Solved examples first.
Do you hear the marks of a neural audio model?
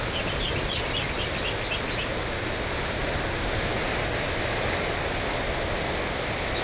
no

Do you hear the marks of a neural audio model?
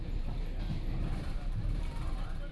yes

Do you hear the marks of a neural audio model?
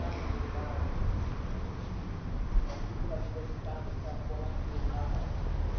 no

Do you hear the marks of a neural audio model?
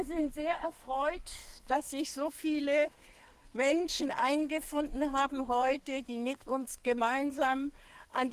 yes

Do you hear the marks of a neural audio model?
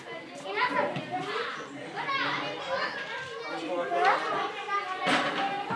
no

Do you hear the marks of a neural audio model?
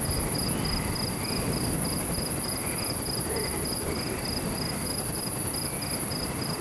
yes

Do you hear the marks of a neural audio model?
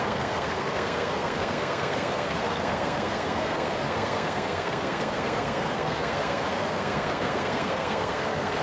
yes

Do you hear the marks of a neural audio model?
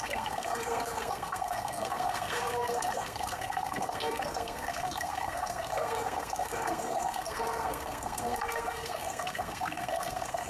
yes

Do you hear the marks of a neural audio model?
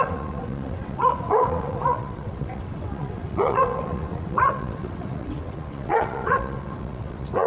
yes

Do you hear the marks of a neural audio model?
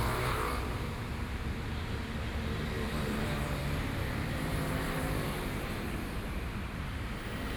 yes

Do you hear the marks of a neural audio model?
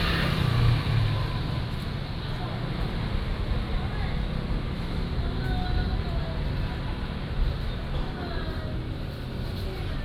no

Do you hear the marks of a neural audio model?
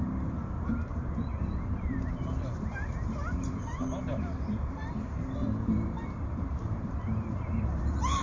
yes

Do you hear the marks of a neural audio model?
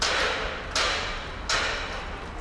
no